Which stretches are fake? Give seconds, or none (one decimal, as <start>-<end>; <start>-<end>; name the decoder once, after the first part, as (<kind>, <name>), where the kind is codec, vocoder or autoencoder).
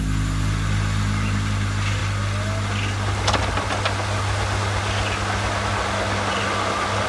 none